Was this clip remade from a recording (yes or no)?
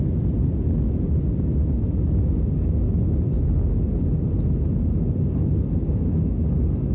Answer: no